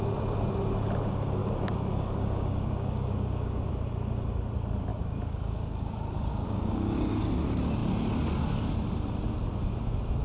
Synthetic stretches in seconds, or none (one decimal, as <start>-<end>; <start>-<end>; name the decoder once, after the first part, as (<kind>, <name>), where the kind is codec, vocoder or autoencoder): 1.4-3.7 (codec, DAC); 4.9-7.2